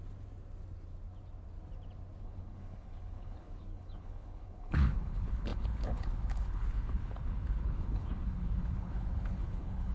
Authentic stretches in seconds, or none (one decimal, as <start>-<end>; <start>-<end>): 0.0-2.2

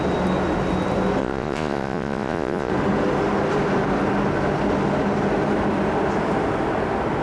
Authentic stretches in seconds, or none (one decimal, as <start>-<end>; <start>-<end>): 0.0-1.2; 2.7-7.2

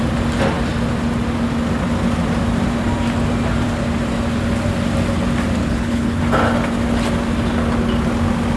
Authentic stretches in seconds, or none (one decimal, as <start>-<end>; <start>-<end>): 0.0-5.6; 6.2-8.6

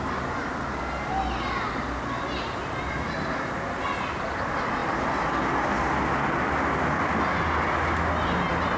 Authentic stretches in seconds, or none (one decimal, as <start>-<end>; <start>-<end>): 0.0-8.8

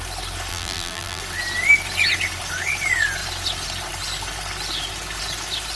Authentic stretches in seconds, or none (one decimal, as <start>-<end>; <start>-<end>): 0.0-0.5; 1.2-5.7

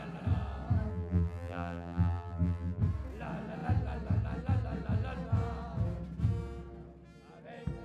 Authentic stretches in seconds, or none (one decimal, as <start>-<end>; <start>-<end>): 0.0-0.9; 2.8-7.8

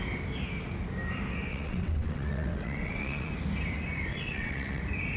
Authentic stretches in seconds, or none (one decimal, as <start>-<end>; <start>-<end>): 0.0-1.5; 3.3-4.1; 4.8-5.2

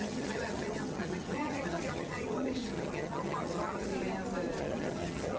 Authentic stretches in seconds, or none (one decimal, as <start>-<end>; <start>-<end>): 3.9-4.6